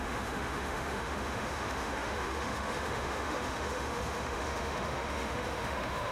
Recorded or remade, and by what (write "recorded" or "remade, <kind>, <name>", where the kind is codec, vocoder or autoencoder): remade, autoencoder, DAC-VAE